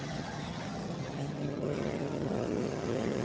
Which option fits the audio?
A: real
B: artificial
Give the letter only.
B